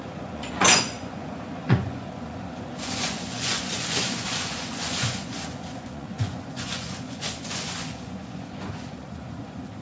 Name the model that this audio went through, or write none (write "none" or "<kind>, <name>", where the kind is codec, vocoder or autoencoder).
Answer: vocoder, Vocos